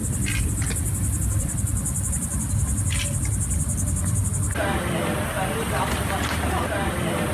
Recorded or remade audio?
recorded